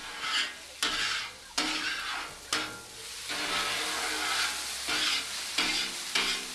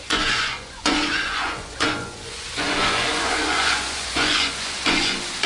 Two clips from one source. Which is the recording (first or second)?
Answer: first